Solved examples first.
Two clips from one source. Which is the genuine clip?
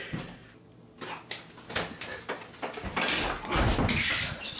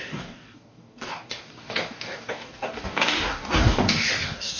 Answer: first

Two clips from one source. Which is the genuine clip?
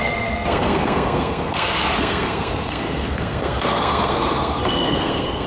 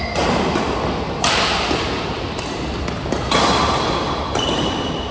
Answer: second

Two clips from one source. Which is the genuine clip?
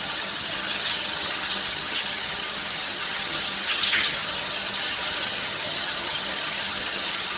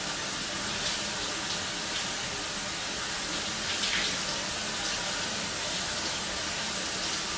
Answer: second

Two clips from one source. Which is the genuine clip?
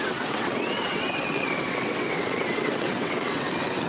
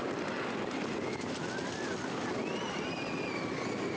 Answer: second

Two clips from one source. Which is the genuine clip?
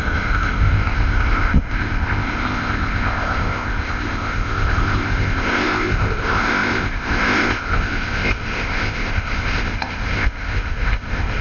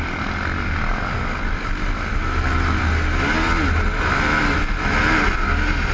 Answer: second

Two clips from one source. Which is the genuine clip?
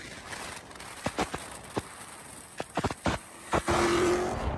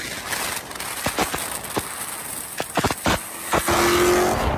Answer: second